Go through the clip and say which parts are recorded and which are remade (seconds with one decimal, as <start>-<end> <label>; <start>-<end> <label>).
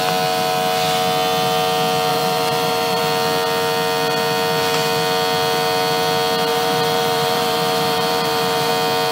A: 0.0-2.1 recorded; 2.1-3.0 remade; 3.0-6.5 recorded; 6.5-8.7 remade; 8.7-9.1 recorded